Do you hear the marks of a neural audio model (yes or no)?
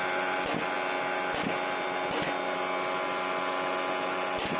no